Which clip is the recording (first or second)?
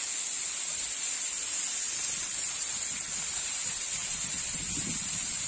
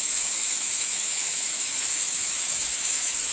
first